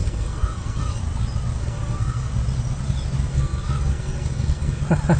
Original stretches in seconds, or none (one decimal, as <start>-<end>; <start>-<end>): 1.0-1.6; 2.3-3.3; 4.8-5.2